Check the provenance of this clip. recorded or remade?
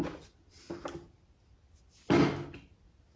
recorded